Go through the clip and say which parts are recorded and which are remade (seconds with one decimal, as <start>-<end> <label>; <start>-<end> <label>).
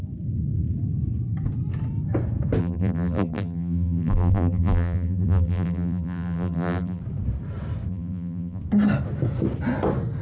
0.0-2.6 recorded; 2.6-7.0 remade; 7.0-7.9 recorded; 7.9-8.6 remade; 8.6-10.2 recorded